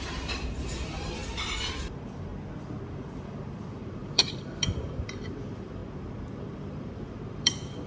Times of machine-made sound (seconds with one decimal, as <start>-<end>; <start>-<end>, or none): 0.0-1.2; 1.7-2.3; 2.9-5.8; 6.4-7.9